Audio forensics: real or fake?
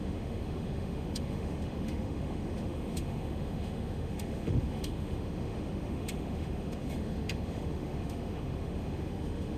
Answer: fake